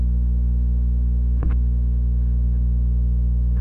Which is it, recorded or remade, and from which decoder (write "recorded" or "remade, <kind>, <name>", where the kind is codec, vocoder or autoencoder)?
remade, autoencoder, DAC-VAE